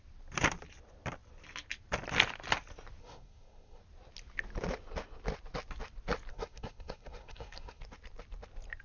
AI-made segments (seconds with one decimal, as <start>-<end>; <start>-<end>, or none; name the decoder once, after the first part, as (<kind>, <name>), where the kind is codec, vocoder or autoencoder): 3.0-3.8 (codec, SNAC); 6.3-7.8